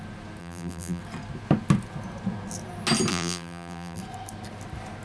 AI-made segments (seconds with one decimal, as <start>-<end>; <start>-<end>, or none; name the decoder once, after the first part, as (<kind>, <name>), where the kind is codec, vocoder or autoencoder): 0.4-1.0 (vocoder, BigVGAN v2); 3.1-4.0

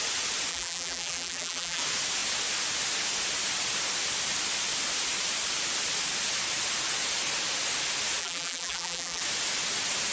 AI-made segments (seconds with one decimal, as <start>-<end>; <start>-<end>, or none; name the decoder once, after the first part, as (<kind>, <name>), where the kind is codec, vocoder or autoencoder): 0.5-1.8 (vocoder, BigVGAN v2); 8.2-9.2

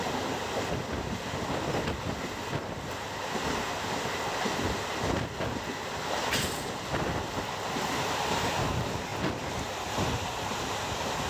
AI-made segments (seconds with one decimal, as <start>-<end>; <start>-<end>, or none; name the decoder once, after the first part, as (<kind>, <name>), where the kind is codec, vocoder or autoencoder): none

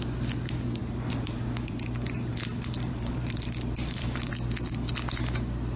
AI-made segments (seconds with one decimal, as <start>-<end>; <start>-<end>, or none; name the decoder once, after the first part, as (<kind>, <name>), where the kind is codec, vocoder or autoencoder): 0.8-4.3 (vocoder, BigVGAN v2)

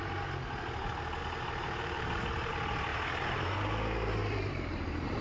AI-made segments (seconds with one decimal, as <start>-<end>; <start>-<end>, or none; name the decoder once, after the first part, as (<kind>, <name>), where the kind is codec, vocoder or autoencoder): 1.2-2.5 (vocoder, BigVGAN v2); 2.9-3.5; 4.2-5.2